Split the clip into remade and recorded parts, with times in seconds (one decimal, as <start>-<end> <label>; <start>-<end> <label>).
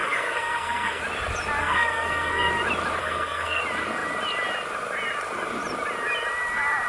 0.0-1.0 remade; 1.0-1.6 recorded; 1.6-2.5 remade; 2.5-3.0 recorded; 3.0-3.6 remade; 3.6-6.9 recorded